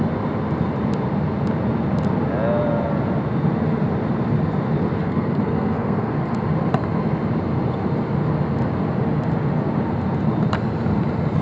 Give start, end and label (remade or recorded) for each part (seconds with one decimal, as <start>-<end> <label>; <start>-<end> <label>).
0.0-5.0 recorded; 5.0-6.1 remade; 6.1-11.4 recorded